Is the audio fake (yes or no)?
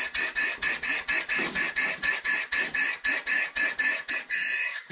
no